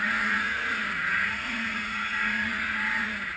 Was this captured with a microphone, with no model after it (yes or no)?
no